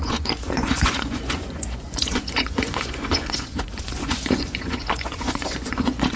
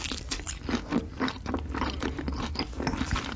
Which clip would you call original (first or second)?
second